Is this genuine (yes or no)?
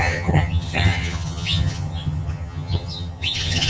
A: no